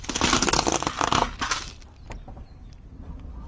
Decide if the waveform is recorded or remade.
recorded